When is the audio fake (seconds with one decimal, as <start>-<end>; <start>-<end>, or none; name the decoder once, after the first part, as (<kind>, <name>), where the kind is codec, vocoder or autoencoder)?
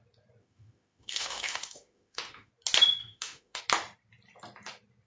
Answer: 0.4-2.5 (autoencoder, DAC-VAE); 3.0-3.6